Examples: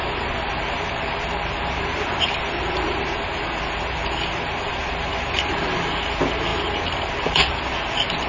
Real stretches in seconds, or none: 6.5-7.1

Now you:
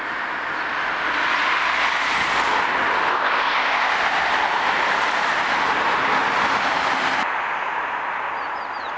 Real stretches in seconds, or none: 0.0-3.1; 3.9-9.0

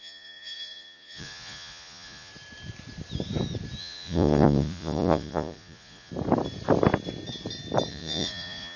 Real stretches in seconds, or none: 2.3-3.8; 6.1-7.9

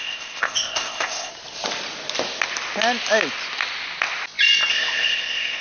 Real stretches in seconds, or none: 1.3-4.7

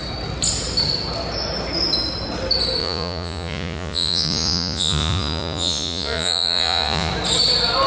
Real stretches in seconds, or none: 0.0-2.8; 7.1-7.9

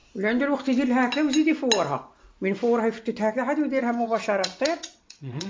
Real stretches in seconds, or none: 0.0-3.8

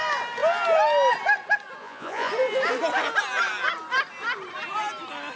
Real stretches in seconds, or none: 0.0-1.8; 2.3-5.4

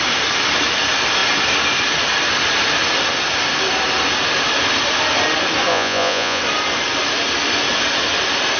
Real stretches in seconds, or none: 0.0-5.7; 6.4-8.6